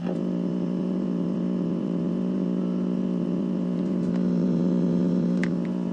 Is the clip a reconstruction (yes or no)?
yes